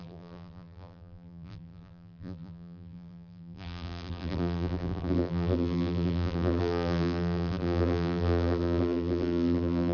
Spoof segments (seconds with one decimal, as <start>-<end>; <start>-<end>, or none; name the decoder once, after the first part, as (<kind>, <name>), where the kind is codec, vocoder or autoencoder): 0.0-9.9 (vocoder, BigVGAN v2)